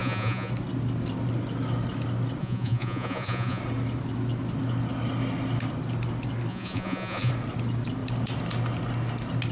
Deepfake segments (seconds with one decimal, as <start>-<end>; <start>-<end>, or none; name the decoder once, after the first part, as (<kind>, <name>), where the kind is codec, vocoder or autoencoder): 0.0-0.5 (vocoder, Vocos); 2.4-3.6; 6.5-7.3